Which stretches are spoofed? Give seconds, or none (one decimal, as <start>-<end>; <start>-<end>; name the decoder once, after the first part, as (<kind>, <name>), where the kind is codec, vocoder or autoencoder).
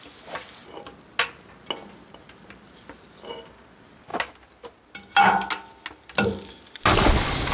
none